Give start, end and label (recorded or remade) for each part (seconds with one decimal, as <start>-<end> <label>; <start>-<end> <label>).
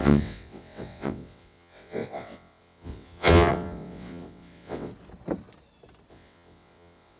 0.0-4.9 remade; 4.9-6.1 recorded; 6.1-7.2 remade